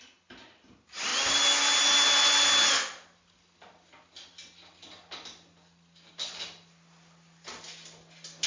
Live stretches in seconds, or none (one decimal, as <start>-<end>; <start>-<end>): 0.0-8.5